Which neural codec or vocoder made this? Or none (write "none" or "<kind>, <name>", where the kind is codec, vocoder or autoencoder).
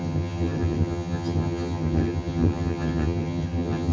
vocoder, HiFi-GAN